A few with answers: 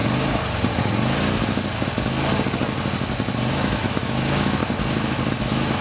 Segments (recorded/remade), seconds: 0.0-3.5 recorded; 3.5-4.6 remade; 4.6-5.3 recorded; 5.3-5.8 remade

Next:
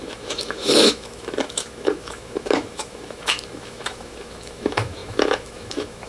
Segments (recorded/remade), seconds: 0.0-6.1 remade

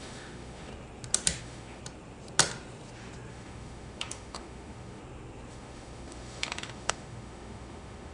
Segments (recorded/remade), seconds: 0.0-0.7 remade; 0.7-1.4 recorded; 1.4-1.8 remade; 1.8-3.3 recorded; 3.3-5.0 remade; 5.0-5.5 recorded; 5.5-8.1 remade

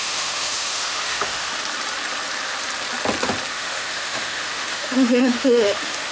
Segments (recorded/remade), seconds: 0.0-1.5 remade; 1.5-3.5 recorded; 3.5-6.1 remade

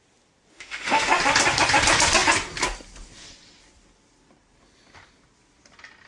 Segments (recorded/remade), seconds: 0.0-0.5 recorded; 0.5-1.1 remade; 1.1-6.1 recorded

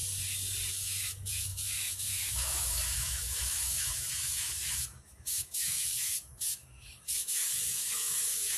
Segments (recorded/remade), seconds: 0.0-0.7 recorded; 0.7-8.6 remade